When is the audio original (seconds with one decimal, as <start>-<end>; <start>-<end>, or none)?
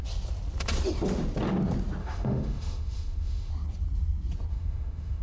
0.0-2.0; 3.5-4.5